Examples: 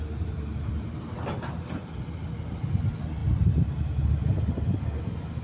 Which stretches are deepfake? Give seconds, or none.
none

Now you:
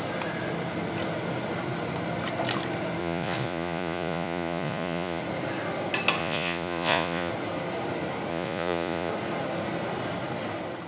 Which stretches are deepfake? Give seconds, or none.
3.0-5.2 (vocoder, Vocos); 6.2-7.3; 8.3-9.1

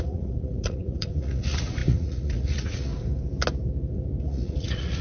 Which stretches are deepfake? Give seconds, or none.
0.0-2.9 (vocoder, Vocos); 4.2-5.0

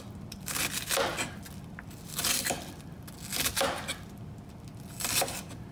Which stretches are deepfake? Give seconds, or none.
none

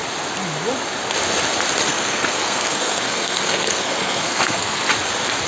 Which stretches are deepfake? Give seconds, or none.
1.9-4.8 (codec, SNAC)

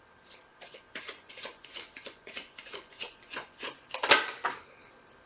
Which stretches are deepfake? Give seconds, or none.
0.5-3.7 (vocoder, Vocos)

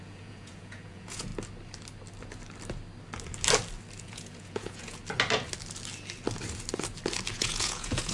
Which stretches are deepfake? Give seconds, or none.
0.0-1.3 (vocoder, Vocos); 4.0-5.0; 7.3-8.1